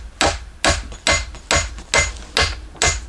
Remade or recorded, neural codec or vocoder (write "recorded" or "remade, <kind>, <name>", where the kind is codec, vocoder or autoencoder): recorded